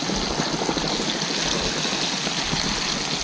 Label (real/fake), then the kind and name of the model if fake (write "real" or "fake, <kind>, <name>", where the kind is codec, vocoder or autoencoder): real